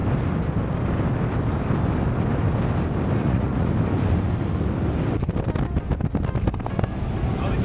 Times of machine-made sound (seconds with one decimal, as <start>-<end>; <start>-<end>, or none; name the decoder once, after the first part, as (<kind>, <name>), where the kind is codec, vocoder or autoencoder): 3.2-3.7 (vocoder, Vocos)